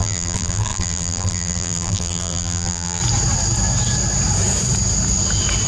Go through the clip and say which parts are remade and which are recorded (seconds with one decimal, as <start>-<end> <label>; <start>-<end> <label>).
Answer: 0.0-3.0 remade; 3.0-5.7 recorded